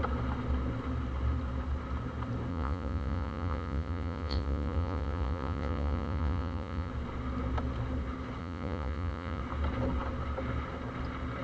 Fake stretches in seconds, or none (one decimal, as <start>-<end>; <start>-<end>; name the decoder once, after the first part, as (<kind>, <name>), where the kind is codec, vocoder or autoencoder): 2.5-6.9 (vocoder, Vocos); 8.4-9.4